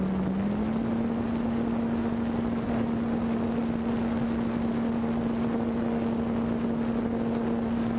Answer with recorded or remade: recorded